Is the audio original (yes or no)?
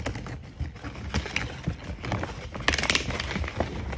yes